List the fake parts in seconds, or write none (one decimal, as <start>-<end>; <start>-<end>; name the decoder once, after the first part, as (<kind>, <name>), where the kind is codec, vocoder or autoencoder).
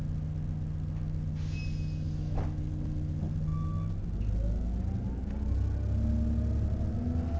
none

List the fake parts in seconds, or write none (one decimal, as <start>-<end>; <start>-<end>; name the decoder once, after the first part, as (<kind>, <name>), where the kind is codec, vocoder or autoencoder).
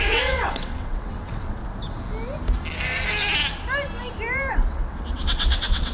0.0-1.6 (vocoder, WaveNeXt); 4.5-5.9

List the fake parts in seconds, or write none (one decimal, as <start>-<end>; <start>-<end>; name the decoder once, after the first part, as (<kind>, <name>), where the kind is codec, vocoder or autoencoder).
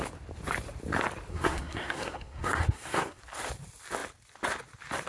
1.3-3.2 (codec, SNAC)